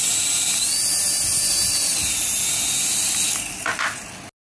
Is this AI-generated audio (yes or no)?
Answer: no